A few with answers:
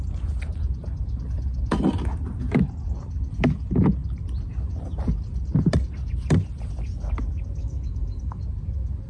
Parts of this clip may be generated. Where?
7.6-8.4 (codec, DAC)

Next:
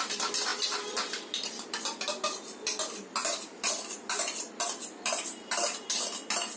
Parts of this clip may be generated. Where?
none